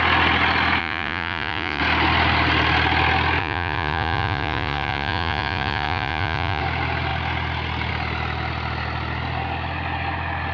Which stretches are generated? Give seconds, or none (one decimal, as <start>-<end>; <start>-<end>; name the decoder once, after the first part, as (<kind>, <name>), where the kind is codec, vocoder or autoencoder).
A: 0.8-1.8 (vocoder, Vocos); 3.4-6.6